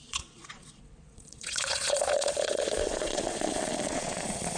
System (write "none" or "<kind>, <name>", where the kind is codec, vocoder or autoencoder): vocoder, Vocos